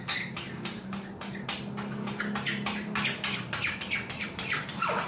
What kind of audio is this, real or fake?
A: real